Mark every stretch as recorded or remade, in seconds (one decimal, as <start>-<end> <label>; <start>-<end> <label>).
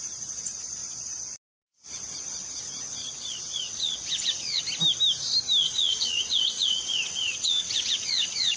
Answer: 0.0-3.0 recorded; 3.0-4.6 remade; 4.6-5.6 recorded; 5.6-8.6 remade